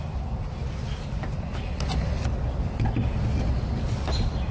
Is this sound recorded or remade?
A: recorded